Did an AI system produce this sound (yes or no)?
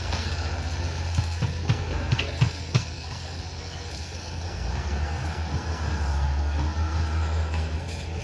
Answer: yes